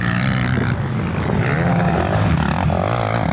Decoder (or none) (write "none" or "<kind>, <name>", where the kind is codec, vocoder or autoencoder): none